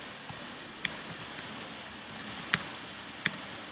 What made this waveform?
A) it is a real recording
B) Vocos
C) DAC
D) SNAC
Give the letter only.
A